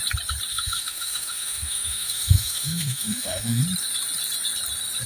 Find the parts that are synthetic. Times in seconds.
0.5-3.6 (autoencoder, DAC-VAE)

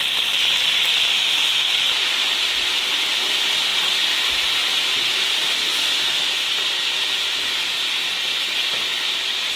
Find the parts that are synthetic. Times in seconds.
1.1-1.7 (autoencoder, DAC-VAE)